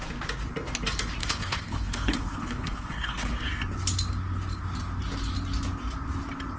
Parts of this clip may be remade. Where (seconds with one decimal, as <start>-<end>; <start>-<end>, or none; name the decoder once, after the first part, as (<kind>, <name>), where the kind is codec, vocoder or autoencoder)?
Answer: 1.2-3.3 (codec, HILCodec)